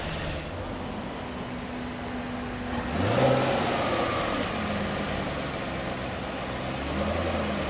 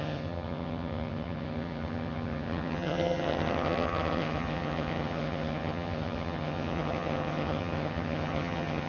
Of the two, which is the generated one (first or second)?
second